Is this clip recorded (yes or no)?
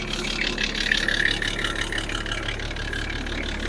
yes